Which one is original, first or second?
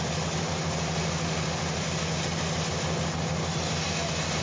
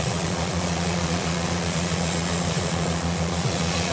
first